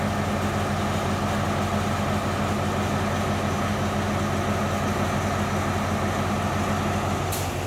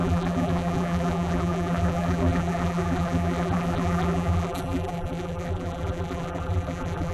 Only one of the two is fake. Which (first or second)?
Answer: second